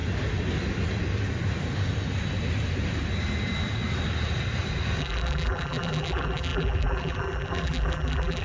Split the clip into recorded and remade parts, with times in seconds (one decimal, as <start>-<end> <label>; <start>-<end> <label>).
0.0-5.0 recorded; 5.0-8.4 remade